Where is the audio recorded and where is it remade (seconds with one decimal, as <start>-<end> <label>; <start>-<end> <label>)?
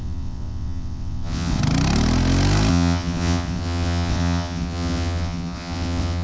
0.0-1.6 remade; 1.6-2.7 recorded; 2.7-6.2 remade